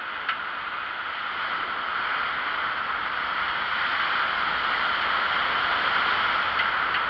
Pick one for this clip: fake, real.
real